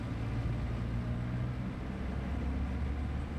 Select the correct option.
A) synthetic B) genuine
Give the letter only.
B